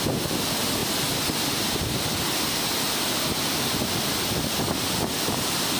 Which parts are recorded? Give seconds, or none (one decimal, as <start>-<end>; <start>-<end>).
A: 0.0-5.8